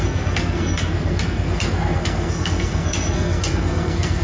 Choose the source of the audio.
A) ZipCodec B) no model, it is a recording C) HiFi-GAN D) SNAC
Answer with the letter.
D